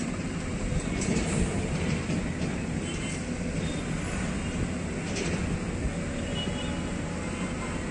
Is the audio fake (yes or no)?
no